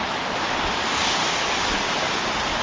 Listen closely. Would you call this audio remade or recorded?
remade